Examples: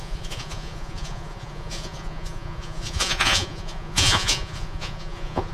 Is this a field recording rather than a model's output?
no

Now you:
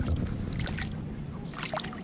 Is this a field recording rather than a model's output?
yes